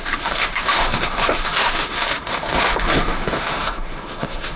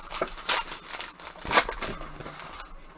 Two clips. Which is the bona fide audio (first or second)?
second